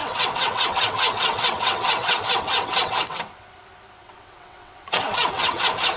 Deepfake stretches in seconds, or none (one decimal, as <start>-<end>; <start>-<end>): 0.0-3.6; 4.0-5.6